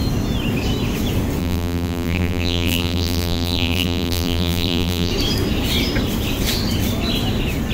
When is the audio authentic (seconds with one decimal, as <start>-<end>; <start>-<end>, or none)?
0.0-1.4; 5.1-7.7